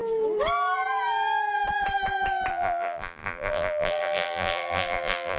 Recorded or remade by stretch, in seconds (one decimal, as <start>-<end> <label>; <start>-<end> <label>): 0.0-2.5 recorded; 2.5-5.4 remade